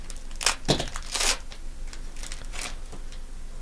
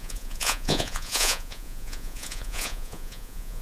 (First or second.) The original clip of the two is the first